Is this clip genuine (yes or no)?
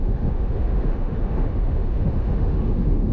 no